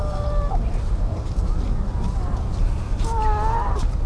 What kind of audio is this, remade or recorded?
recorded